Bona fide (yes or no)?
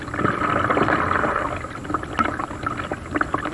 yes